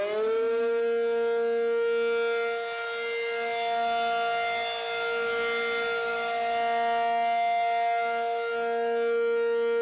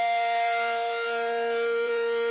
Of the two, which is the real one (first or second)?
first